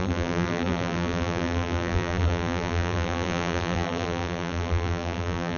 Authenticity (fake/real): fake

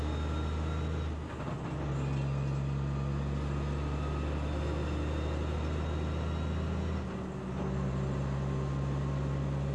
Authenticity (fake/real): real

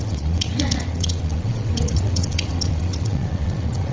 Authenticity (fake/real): fake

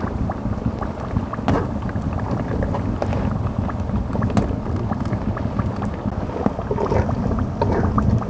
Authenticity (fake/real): real